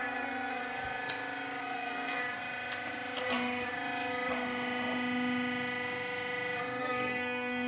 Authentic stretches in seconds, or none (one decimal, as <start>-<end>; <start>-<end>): 0.6-1.6; 2.2-6.8